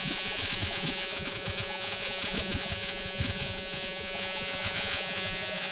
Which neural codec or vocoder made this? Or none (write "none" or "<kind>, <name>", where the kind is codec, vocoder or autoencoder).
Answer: vocoder, Vocos